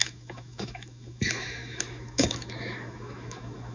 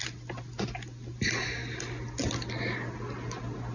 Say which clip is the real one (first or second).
second